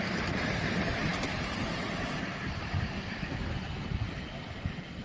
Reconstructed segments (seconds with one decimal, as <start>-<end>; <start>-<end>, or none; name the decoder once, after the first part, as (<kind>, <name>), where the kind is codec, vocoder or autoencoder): none